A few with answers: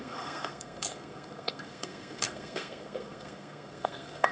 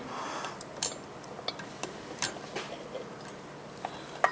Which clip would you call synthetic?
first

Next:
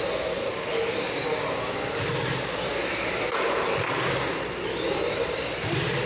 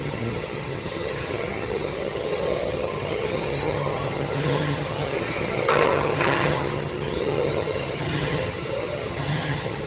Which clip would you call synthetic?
second